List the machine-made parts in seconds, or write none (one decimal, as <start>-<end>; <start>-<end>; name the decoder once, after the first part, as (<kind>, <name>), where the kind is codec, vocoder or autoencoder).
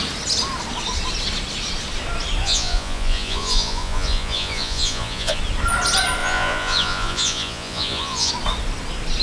2.4-5.4 (vocoder, Vocos); 6.2-8.3